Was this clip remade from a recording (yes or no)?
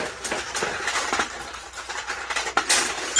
yes